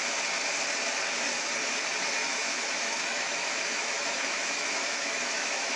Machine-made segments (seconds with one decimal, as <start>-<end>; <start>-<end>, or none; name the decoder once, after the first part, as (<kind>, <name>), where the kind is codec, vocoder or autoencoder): 2.2-5.8 (autoencoder, DAC-VAE)